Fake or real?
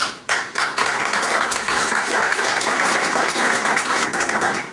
fake